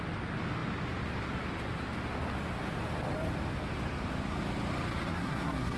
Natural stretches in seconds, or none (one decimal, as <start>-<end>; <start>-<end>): 0.0-5.1